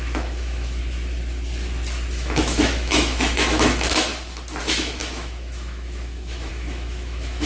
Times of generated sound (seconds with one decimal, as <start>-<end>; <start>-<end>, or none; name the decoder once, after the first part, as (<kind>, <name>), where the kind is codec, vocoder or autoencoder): 0.0-0.8 (autoencoder, DAC-VAE); 2.1-4.1; 4.6-7.5